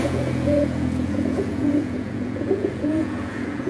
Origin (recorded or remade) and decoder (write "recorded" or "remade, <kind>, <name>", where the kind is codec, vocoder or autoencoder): remade, vocoder, Vocos